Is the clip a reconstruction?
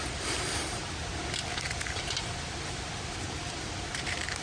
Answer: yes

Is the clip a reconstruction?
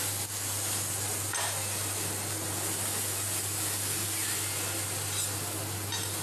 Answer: no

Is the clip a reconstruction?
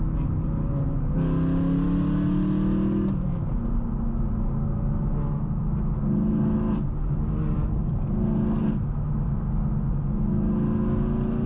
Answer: no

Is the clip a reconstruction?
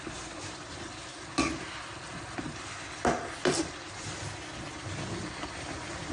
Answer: no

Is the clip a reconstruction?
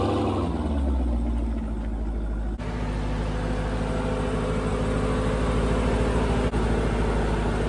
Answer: no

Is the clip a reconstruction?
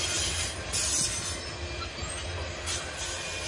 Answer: no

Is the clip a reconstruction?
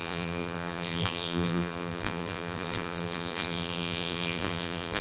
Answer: yes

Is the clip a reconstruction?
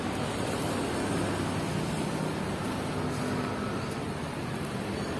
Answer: no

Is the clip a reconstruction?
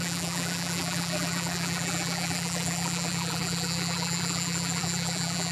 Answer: yes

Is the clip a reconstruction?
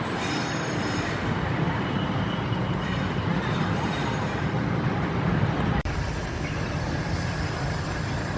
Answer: yes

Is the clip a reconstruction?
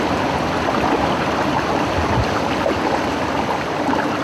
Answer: no